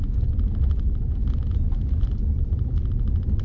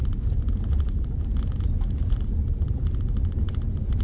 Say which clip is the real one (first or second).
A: first